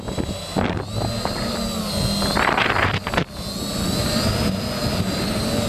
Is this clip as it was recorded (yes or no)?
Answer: yes